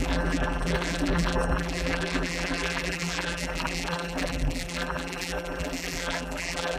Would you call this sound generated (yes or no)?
yes